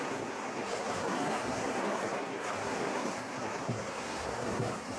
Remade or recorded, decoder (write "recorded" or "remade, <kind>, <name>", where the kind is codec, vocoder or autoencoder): remade, codec, SNAC